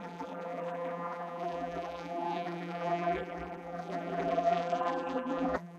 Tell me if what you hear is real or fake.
fake